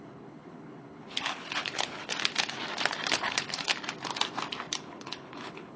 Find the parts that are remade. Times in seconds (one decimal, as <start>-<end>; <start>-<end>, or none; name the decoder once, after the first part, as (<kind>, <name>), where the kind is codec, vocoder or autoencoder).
0.0-2.1 (codec, HILCodec); 3.1-3.7; 4.7-5.8